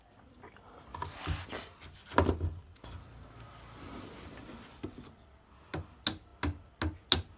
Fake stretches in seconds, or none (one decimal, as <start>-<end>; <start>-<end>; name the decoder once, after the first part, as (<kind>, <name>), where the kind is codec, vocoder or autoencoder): none